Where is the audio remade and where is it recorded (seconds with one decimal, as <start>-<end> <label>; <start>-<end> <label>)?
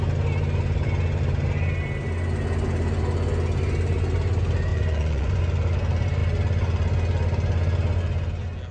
0.0-4.7 recorded; 4.7-5.4 remade; 5.4-8.7 recorded